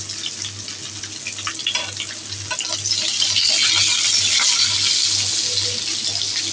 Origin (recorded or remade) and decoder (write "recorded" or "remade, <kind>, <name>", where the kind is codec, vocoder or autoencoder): recorded